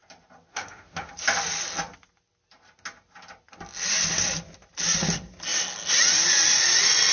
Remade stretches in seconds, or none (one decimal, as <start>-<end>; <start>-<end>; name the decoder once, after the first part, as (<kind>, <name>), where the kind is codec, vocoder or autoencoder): 0.5-1.1 (autoencoder, DAC-VAE)